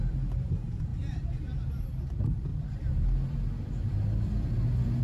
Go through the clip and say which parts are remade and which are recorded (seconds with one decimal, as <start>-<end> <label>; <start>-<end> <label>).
0.0-0.9 remade; 0.9-1.7 recorded; 1.7-2.5 remade; 2.5-5.0 recorded